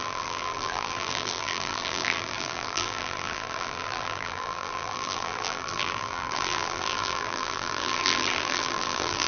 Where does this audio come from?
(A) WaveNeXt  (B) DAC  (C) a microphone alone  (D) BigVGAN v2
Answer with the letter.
D